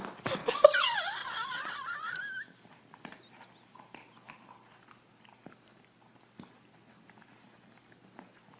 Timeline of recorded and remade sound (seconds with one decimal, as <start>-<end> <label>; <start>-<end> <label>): 0.0-0.4 recorded; 0.4-2.2 remade; 2.2-8.6 recorded